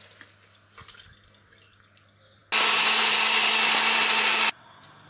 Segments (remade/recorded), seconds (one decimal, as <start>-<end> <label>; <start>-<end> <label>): 0.0-5.1 recorded